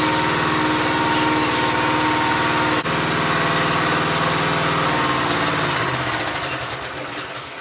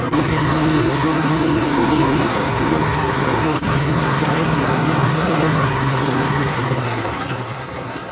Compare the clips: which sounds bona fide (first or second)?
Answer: first